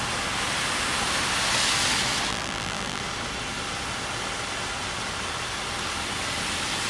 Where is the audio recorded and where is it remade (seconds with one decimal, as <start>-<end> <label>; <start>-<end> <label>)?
0.0-2.3 recorded; 2.3-3.0 remade; 3.0-6.9 recorded